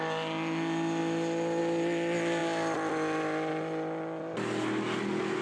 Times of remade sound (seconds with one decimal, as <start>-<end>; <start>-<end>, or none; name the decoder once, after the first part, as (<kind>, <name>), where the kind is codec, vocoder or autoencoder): none